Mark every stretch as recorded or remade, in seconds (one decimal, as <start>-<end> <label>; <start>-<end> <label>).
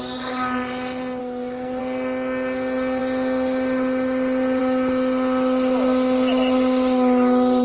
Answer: 0.0-1.2 recorded; 1.2-1.8 remade; 1.8-7.6 recorded